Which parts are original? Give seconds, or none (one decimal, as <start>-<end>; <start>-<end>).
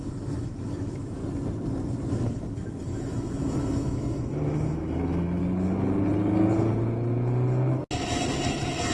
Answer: 1.2-2.1; 5.4-8.9